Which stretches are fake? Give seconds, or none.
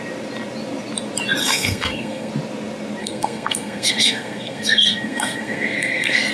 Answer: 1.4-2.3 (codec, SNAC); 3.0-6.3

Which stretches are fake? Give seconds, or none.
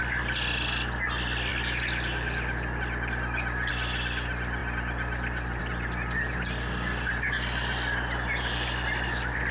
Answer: none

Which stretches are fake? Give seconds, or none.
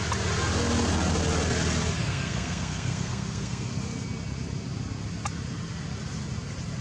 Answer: 2.0-3.7 (codec, SNAC)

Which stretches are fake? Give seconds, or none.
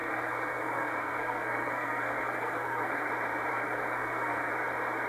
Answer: 0.0-3.1 (codec, SNAC); 3.5-4.5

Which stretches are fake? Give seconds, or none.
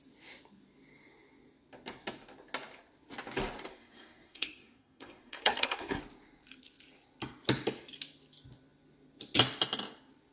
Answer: 3.7-6.0 (codec, SNAC)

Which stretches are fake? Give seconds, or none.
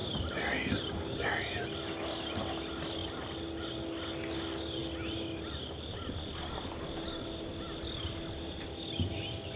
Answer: none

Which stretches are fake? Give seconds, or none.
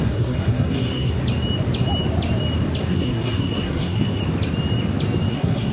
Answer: 0.0-1.2 (codec, SNAC); 2.8-4.2; 5.3-5.7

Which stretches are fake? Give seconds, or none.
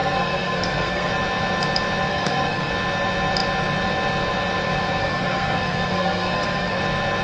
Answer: 0.0-1.1 (codec, SNAC); 2.1-2.7; 5.0-6.8